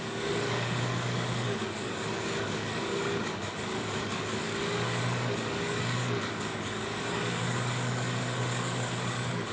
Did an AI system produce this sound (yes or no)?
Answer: yes